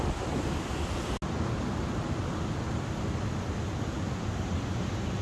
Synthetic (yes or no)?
no